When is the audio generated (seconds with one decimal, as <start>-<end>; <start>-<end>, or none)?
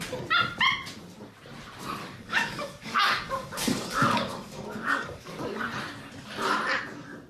2.0-5.6